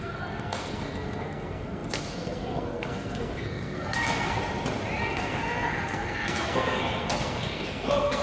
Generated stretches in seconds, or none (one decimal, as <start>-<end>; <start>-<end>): 0.0-4.4; 5.0-8.2